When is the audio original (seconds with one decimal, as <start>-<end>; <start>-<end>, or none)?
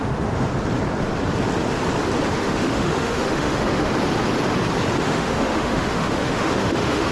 0.5-2.3; 3.9-5.0